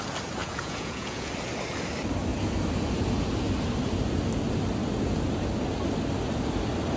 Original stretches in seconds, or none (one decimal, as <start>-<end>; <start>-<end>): 0.0-0.4; 1.3-7.0